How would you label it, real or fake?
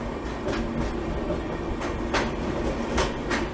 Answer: real